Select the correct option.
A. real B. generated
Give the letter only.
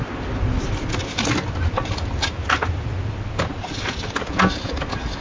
A